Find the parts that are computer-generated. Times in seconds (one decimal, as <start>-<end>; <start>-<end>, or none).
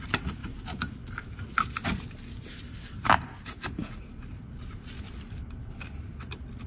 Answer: none